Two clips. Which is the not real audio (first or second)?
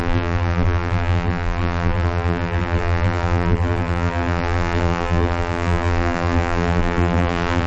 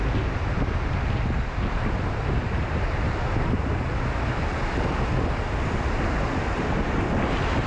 first